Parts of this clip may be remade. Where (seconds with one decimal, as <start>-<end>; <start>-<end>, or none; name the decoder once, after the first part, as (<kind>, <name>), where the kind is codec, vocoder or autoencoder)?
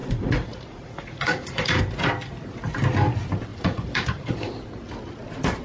0.0-1.8 (vocoder, Vocos); 3.5-4.5